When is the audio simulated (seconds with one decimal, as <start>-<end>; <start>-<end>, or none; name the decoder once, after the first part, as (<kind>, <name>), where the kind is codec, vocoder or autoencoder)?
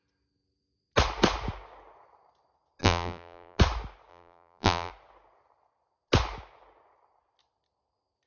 2.8-3.6 (vocoder, BigVGAN v2); 4.1-4.9